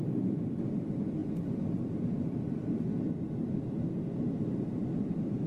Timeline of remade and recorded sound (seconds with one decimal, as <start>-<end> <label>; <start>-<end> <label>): 0.0-5.5 recorded